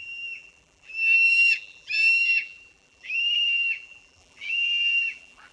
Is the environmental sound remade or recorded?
remade